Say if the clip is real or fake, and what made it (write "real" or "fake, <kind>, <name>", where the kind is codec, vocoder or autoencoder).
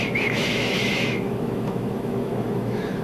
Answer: fake, autoencoder, DAC-VAE